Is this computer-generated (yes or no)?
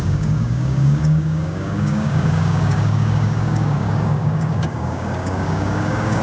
yes